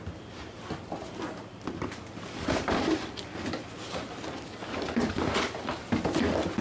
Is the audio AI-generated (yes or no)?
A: no